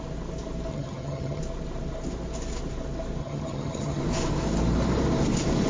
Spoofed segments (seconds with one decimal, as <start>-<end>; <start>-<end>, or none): 0.7-1.4; 3.2-4.0